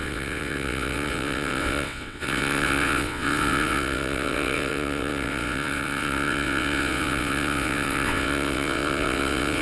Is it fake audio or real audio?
fake